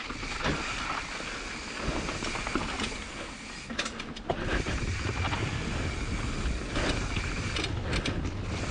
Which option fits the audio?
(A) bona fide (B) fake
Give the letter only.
A